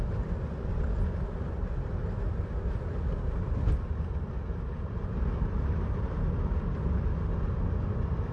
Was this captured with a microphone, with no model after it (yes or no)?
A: no